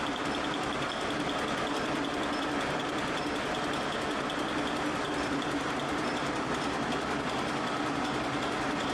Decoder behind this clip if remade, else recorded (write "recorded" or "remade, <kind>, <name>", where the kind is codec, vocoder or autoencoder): recorded